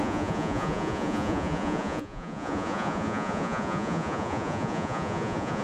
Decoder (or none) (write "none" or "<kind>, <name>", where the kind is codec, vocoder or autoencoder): vocoder, Vocos